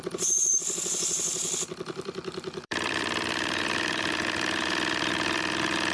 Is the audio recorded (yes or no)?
no